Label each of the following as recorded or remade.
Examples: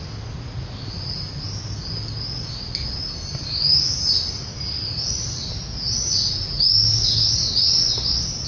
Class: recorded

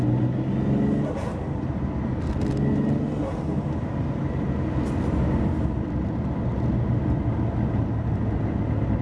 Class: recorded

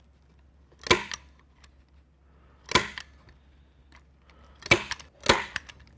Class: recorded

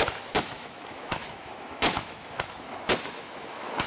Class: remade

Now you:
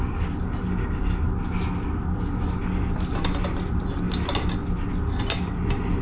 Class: recorded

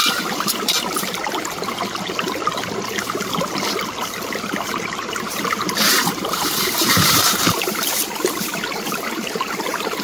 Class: remade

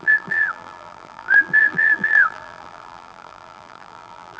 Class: remade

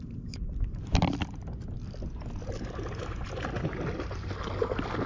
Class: recorded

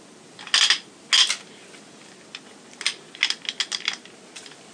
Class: recorded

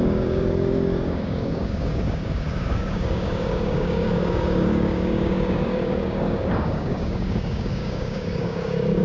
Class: remade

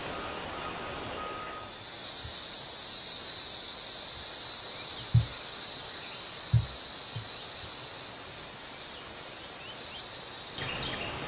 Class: recorded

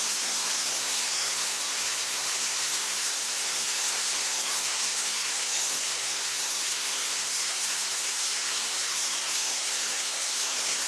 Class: remade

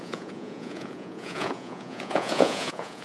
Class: remade